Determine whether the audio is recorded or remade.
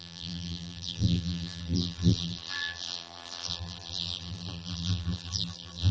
remade